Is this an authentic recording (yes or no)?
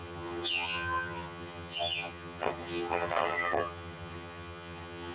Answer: no